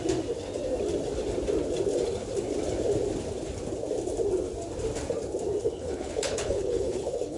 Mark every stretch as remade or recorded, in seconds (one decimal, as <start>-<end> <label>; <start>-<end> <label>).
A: 0.0-5.6 recorded; 5.6-7.4 remade